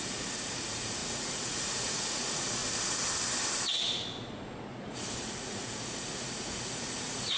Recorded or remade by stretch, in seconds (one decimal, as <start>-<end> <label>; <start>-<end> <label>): 0.0-2.6 remade; 2.6-4.6 recorded; 4.6-7.4 remade